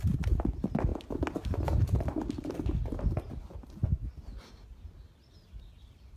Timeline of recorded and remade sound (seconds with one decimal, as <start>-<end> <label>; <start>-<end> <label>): 0.0-6.2 recorded